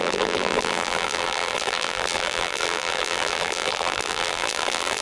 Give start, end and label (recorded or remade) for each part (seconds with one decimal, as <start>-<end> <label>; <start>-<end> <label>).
0.0-5.0 remade